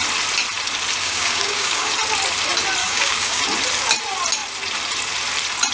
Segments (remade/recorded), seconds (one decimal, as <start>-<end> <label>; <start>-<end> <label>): 0.0-1.0 recorded; 1.0-1.9 remade; 1.9-2.8 recorded; 2.8-3.4 remade; 3.4-5.7 recorded